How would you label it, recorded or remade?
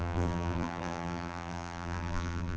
remade